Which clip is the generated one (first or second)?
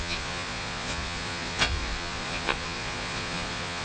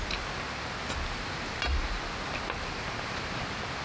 first